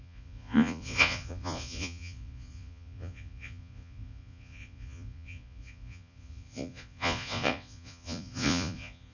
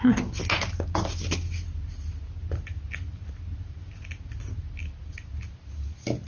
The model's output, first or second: first